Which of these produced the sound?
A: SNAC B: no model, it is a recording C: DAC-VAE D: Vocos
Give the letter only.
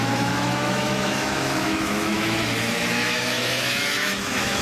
C